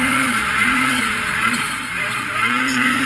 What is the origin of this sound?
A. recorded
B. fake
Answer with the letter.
B